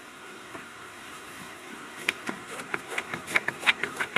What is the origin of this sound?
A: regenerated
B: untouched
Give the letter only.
A